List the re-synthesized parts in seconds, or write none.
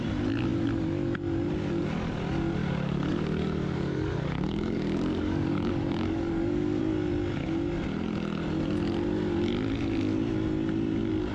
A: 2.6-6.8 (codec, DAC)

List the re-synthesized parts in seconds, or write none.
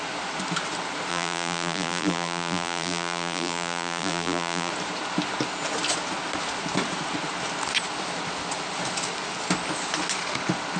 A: 1.1-4.7 (vocoder, BigVGAN v2)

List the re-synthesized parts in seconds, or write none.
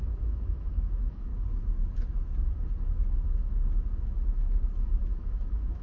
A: 0.0-1.3 (autoencoder, DAC-VAE); 4.8-5.8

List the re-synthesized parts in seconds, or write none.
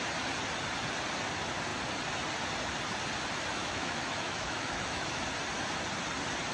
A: 3.6-5.1 (autoencoder, DAC-VAE)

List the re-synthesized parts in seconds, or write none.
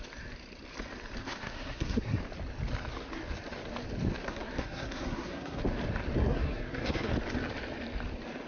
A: 1.2-2.2 (codec, SNAC); 4.2-5.6; 6.2-7.1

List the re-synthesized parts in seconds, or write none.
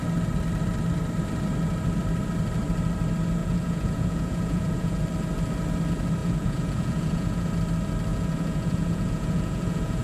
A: 3.4-5.0 (vocoder, Vocos); 6.2-7.5; 8.1-10.0